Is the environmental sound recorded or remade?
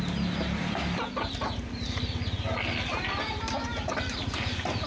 recorded